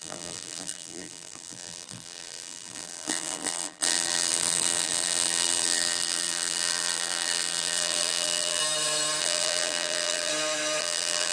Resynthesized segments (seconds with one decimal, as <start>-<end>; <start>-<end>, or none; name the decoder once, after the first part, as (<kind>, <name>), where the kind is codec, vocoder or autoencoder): 0.0-8.6 (vocoder, BigVGAN v2); 9.2-10.3; 10.8-11.3